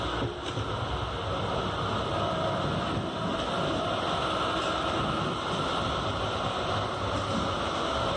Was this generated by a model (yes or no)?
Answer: no